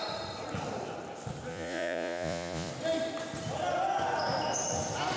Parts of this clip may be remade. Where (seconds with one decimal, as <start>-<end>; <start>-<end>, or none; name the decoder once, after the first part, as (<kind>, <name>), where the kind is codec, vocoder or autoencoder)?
1.5-2.7 (vocoder, Vocos)